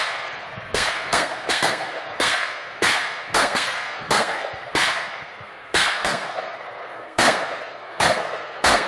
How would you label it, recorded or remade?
remade